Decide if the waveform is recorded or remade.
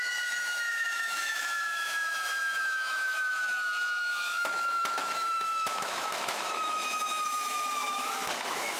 remade